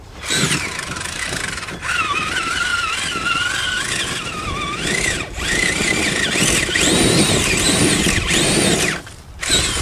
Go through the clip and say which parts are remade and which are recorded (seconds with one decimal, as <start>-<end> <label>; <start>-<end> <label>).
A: 0.0-2.7 remade; 2.7-4.3 recorded; 4.3-9.8 remade